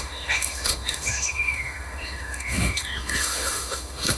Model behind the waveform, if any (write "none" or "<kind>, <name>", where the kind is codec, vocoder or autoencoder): autoencoder, DAC-VAE